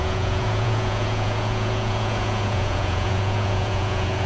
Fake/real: fake